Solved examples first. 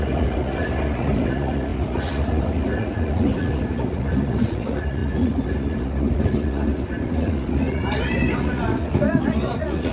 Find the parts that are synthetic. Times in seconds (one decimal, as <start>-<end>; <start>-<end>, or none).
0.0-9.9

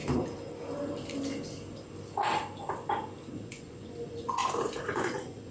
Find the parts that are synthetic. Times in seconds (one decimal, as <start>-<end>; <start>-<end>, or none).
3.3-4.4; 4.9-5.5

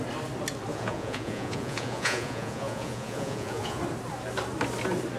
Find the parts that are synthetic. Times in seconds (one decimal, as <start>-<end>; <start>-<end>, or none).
0.7-3.8

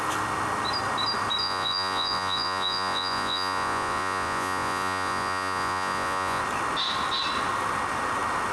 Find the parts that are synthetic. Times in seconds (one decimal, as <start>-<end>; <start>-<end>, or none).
1.4-6.4

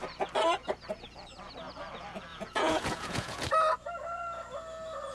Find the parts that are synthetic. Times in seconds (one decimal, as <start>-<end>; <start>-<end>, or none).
2.3-3.5

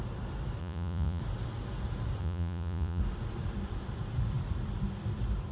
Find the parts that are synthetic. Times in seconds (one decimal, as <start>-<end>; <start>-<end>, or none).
0.6-1.2; 2.2-3.0

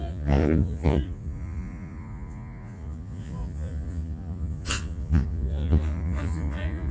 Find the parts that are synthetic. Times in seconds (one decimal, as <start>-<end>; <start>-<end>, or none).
0.0-6.9

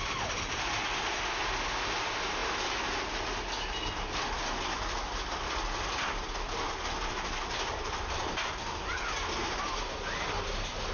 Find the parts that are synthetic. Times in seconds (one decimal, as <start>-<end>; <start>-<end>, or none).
none